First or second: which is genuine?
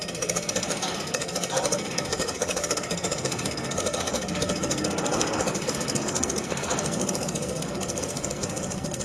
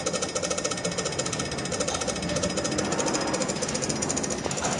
second